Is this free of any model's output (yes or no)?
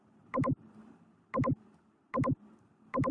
no